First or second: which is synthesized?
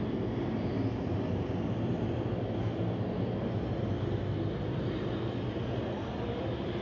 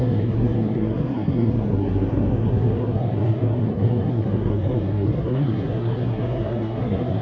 second